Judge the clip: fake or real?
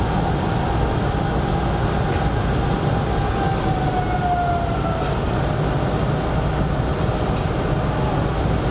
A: real